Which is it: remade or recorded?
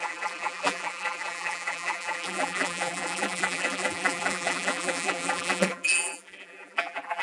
remade